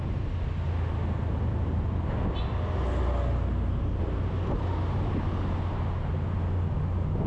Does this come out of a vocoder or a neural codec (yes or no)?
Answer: no